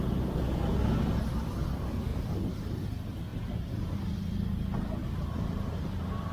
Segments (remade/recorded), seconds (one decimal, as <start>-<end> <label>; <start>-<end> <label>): 0.0-2.1 recorded; 2.1-2.8 remade; 2.8-3.3 recorded; 3.3-4.0 remade; 4.0-5.0 recorded; 5.0-6.3 remade